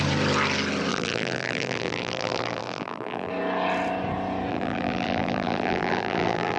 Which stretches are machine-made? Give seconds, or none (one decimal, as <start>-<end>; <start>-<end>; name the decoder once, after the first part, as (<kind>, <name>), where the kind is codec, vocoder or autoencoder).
0.9-3.3 (vocoder, BigVGAN v2); 4.5-6.6